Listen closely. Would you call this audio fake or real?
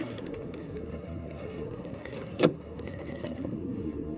fake